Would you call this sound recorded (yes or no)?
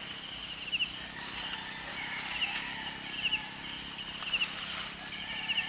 yes